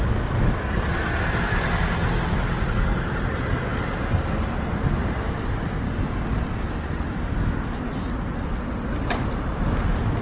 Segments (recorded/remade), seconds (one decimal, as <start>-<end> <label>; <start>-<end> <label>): 0.0-10.2 recorded